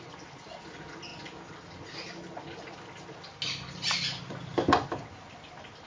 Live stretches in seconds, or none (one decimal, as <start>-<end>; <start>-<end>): 0.0-5.9